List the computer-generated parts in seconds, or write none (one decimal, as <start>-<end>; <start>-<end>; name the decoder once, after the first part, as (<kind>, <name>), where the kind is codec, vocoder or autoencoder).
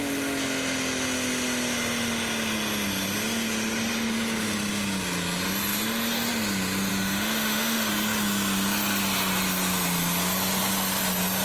6.9-7.9 (autoencoder, DAC-VAE)